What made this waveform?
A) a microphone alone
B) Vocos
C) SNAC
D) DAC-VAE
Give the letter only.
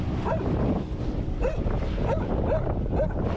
A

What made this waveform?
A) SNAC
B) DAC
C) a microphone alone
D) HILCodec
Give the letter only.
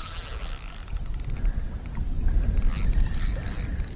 C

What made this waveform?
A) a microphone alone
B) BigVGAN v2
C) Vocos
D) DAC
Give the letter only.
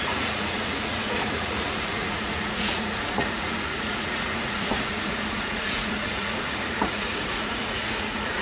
C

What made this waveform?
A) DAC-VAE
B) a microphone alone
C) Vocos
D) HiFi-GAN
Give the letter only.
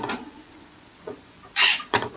C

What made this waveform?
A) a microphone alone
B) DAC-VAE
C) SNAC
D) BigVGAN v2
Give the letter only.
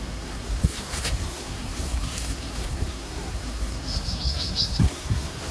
C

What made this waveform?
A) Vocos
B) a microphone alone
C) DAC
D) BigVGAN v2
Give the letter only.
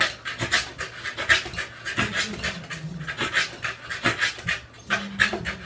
B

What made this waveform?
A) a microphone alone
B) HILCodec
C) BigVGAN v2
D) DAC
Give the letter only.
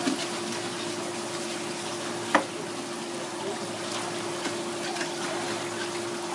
A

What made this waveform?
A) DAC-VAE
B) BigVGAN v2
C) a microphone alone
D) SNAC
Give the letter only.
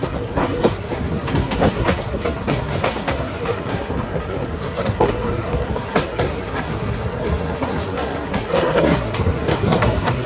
D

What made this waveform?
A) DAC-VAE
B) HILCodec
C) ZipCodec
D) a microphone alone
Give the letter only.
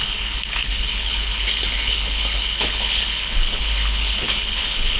B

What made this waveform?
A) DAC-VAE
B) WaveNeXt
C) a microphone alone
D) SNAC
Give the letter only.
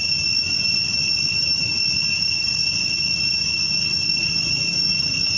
C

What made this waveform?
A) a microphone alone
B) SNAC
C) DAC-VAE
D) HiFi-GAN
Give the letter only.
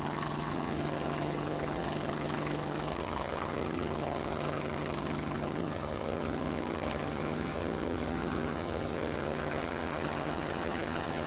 D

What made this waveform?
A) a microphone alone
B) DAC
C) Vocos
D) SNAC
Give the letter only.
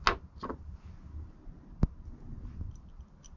A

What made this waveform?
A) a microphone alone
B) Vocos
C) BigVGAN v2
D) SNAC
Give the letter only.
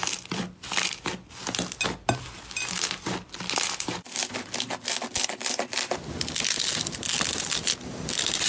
A